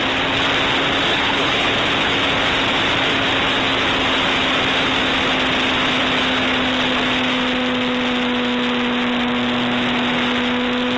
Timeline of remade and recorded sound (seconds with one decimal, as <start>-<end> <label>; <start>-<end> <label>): 0.0-1.1 recorded; 1.1-1.7 remade; 1.7-11.0 recorded